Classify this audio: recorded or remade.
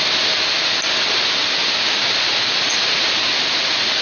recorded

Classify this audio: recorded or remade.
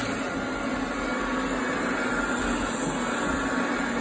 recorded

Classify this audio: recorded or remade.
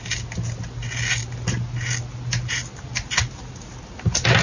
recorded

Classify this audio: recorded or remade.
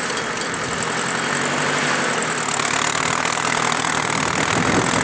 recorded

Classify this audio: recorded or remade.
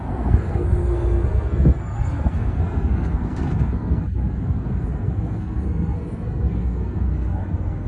remade